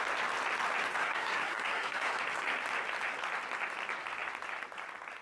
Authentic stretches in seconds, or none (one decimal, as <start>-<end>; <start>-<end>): 0.0-1.0; 2.2-5.2